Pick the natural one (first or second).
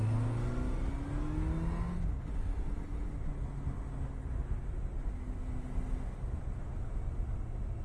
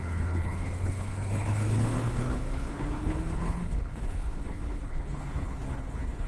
first